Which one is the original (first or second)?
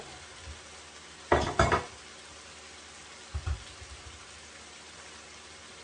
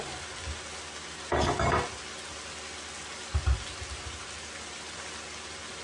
second